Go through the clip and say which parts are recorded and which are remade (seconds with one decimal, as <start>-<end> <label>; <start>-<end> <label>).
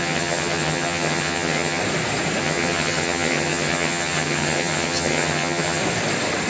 0.0-1.8 remade; 1.8-2.4 recorded; 2.4-5.8 remade; 5.8-6.5 recorded